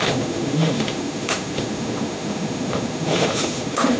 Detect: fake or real fake